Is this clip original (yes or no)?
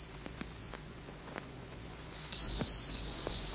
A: no